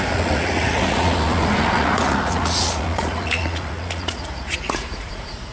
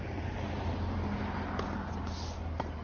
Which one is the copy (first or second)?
first